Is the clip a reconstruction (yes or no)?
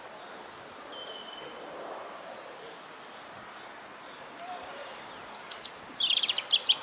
no